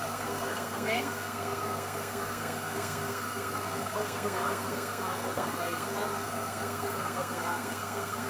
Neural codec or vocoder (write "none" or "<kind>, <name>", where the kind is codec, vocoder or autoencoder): codec, SNAC